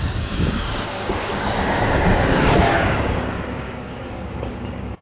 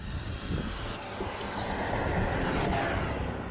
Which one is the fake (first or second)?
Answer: first